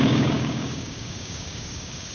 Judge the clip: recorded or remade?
remade